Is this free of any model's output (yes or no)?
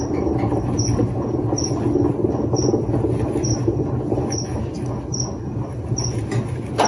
yes